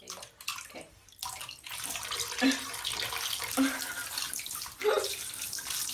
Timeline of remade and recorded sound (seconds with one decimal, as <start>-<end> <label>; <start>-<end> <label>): 0.0-5.9 recorded

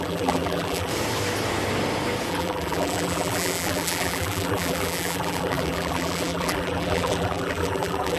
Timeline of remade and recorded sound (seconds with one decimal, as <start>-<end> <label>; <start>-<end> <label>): 0.0-0.9 remade; 0.9-2.3 recorded; 2.3-8.2 remade

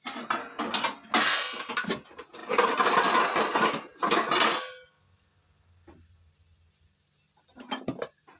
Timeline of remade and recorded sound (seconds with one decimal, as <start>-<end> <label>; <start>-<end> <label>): 0.0-8.4 recorded

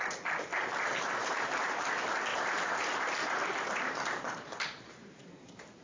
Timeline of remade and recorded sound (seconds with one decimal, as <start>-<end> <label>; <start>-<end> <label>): 0.0-0.9 recorded; 0.9-1.9 remade; 1.9-2.3 recorded; 2.3-5.8 remade

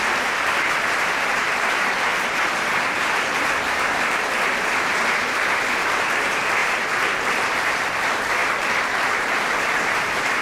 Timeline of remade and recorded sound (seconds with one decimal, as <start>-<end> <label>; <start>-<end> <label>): 0.0-8.4 remade; 8.4-9.5 recorded; 9.5-10.4 remade